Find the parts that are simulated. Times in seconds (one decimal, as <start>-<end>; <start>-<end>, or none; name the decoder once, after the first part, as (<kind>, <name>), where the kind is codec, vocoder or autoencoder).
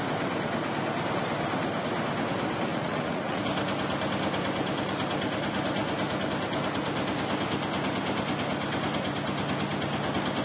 2.7-3.4 (vocoder, Vocos)